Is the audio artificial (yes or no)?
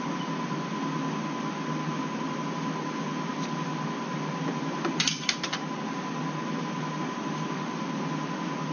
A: no